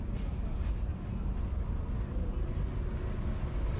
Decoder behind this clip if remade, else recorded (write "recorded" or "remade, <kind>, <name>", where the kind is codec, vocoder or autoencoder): recorded